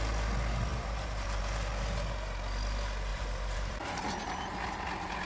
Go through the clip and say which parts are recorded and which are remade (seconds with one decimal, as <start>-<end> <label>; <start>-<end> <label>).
0.0-0.7 recorded; 0.7-1.4 remade; 1.4-3.1 recorded; 3.1-4.7 remade; 4.7-5.3 recorded